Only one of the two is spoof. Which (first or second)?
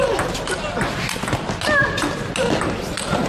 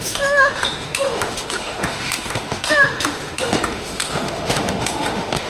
second